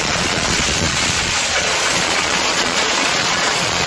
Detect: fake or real fake